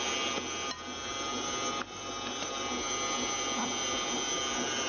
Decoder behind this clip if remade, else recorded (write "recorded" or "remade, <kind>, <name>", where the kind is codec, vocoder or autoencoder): recorded